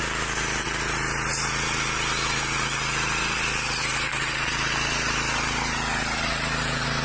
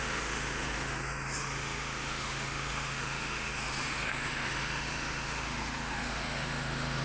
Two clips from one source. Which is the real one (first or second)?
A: first